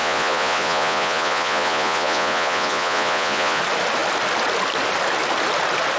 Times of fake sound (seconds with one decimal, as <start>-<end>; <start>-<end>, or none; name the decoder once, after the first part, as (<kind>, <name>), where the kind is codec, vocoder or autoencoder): 0.0-3.6 (vocoder, Vocos)